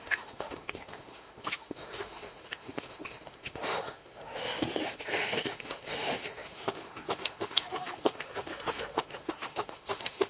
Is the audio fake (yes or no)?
yes